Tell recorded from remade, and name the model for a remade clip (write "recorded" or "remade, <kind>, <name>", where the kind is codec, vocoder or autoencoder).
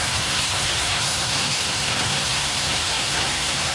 remade, codec, SNAC